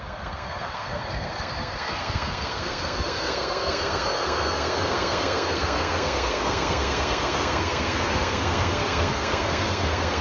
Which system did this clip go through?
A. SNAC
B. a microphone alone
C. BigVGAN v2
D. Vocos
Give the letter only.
A